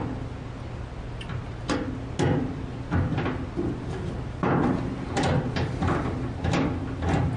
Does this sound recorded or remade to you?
recorded